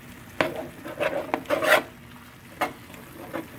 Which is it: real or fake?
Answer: real